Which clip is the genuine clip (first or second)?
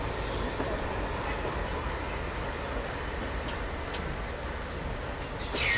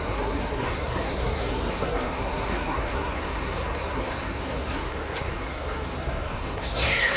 first